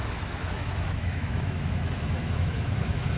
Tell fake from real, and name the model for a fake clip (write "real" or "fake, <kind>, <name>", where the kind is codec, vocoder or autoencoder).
fake, autoencoder, DAC-VAE